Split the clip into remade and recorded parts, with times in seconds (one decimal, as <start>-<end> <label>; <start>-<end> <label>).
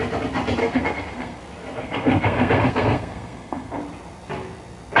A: 0.0-0.6 recorded; 0.6-1.4 remade; 1.4-1.8 recorded; 1.8-3.8 remade; 3.8-5.0 recorded